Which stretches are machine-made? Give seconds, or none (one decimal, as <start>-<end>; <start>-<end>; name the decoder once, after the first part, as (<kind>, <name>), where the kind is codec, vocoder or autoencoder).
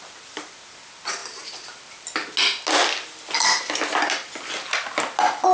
none